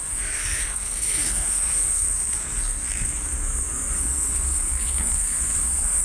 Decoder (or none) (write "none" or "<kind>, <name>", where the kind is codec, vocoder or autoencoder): codec, SNAC